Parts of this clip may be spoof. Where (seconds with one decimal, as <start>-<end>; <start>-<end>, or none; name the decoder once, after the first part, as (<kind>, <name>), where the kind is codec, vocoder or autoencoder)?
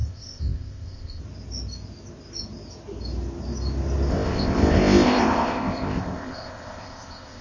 0.0-1.2 (codec, ZipCodec); 4.1-7.4